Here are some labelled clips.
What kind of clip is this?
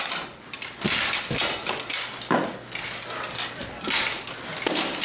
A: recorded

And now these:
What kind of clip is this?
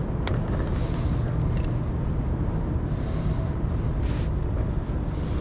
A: recorded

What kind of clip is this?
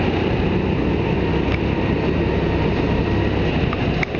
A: recorded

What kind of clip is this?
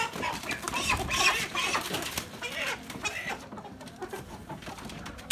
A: remade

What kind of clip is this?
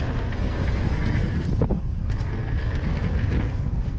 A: remade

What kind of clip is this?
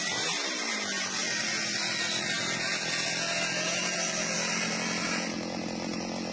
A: recorded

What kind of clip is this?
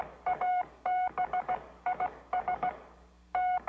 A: remade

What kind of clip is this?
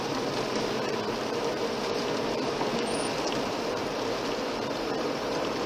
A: remade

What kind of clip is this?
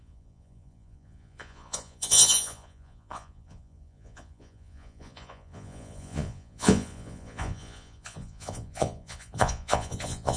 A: remade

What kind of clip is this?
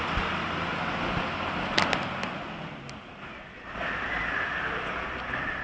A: recorded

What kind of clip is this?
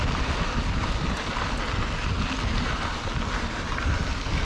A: recorded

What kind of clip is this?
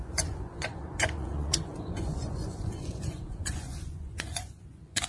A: remade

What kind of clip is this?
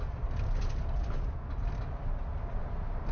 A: recorded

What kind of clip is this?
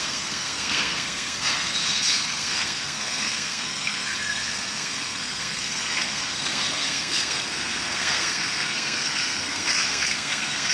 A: remade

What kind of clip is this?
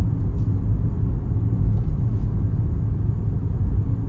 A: recorded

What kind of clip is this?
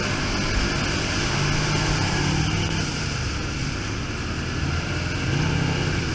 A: recorded